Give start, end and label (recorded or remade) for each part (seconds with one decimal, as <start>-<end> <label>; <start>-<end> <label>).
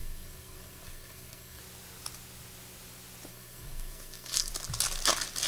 0.0-1.6 remade; 1.6-3.3 recorded; 3.3-4.5 remade; 4.5-5.5 recorded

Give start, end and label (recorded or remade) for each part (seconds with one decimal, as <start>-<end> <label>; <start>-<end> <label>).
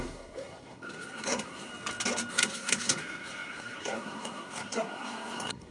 0.0-1.7 remade; 1.7-2.3 recorded; 2.3-5.7 remade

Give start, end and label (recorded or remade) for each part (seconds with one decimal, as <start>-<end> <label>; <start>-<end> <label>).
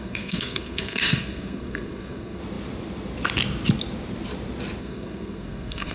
0.0-2.4 remade; 2.4-4.8 recorded; 4.8-5.9 remade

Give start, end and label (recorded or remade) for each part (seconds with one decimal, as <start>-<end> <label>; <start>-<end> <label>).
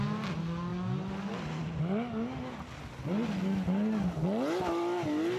0.0-5.4 recorded